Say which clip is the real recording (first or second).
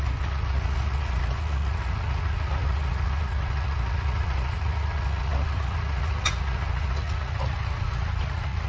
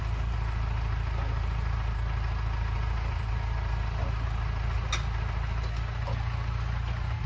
second